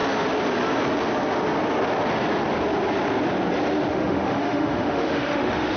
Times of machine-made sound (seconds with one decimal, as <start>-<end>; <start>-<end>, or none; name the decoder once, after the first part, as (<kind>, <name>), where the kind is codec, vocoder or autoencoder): 3.9-5.8 (autoencoder, DAC-VAE)